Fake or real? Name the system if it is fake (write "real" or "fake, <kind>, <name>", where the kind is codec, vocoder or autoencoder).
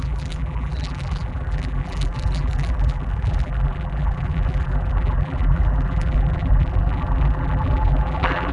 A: fake, vocoder, BigVGAN v2